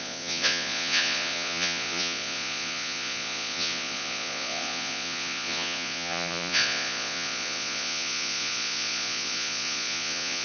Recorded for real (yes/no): no